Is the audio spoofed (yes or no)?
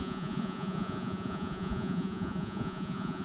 yes